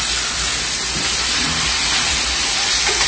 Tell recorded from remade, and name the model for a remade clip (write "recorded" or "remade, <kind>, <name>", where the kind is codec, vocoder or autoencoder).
remade, vocoder, BigVGAN v2